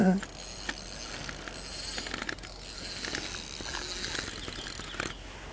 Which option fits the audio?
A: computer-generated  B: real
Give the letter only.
B